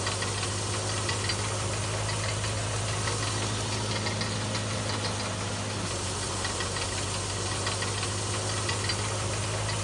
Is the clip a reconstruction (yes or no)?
no